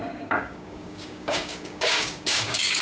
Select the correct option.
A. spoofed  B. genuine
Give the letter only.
A